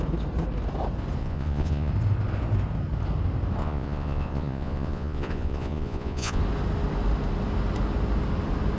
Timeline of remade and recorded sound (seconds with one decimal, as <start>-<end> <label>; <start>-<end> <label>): 0.0-1.2 recorded; 1.2-1.9 remade; 1.9-3.6 recorded; 3.6-6.4 remade; 6.4-8.8 recorded